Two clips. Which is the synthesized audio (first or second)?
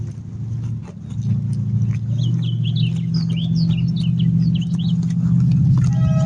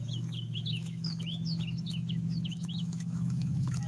second